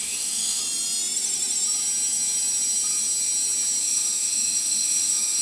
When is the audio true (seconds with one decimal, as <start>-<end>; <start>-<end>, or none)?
0.6-3.8